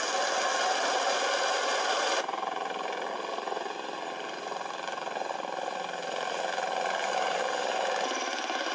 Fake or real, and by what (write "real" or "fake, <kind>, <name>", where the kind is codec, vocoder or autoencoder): real